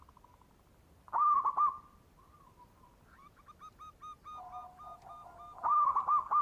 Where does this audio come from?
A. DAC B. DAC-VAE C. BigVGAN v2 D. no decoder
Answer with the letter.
D